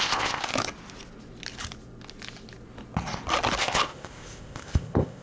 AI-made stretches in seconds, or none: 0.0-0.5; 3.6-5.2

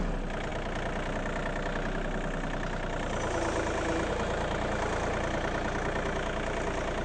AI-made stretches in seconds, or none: none

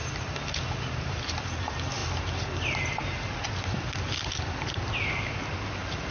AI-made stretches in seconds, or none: none